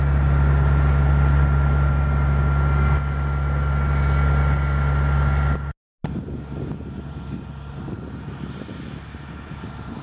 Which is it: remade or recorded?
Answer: recorded